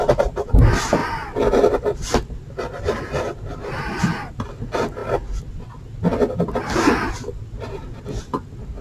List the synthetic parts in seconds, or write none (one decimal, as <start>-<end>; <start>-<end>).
none

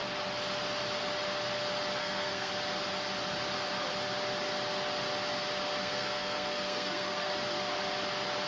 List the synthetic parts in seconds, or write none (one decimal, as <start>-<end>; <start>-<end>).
2.0-2.5; 5.8-7.3

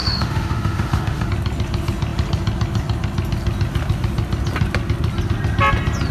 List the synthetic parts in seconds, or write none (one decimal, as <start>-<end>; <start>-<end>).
0.0-1.3

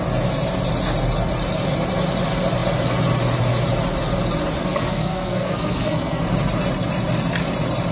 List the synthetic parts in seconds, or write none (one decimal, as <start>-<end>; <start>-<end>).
4.6-6.2

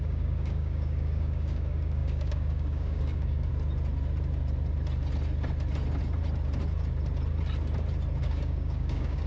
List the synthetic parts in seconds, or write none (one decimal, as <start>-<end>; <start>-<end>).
0.0-3.5; 8.2-9.3

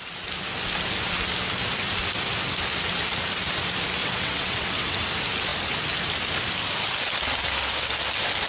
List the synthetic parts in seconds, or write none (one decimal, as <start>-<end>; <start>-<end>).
4.0-5.1